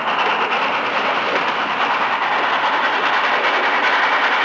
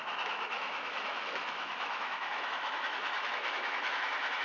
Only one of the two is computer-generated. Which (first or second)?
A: second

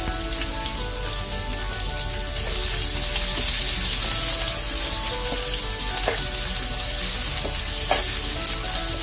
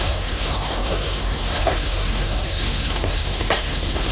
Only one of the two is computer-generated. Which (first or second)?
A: second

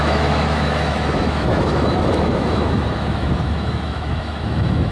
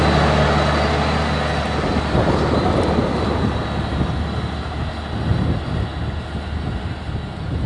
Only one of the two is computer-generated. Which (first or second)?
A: first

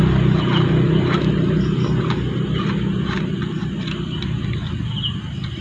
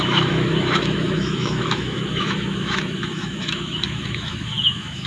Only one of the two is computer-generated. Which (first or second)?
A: second